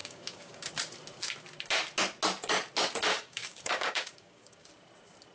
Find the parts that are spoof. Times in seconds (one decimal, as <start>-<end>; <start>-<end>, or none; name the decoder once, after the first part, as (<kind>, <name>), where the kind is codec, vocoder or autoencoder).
0.0-0.7 (codec, DAC); 3.1-4.7